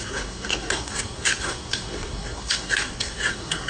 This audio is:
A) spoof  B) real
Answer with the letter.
A